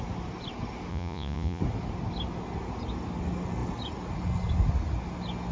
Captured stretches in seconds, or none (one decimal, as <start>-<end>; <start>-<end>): 0.0-0.9; 1.6-5.5